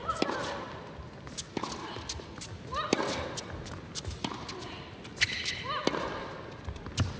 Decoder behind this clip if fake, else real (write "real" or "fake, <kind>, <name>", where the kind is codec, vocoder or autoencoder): real